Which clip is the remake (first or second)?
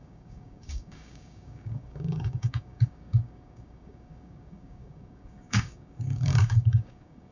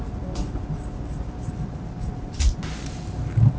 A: first